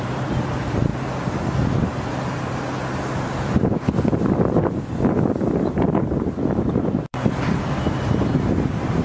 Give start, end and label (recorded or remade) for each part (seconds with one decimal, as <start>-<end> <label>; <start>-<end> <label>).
0.0-0.9 remade; 0.9-6.0 recorded; 6.0-9.0 remade